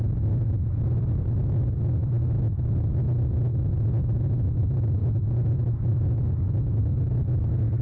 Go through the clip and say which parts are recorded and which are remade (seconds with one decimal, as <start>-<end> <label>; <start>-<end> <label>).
0.0-5.9 recorded; 5.9-6.8 remade; 6.8-7.8 recorded